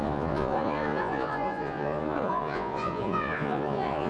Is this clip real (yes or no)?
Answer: no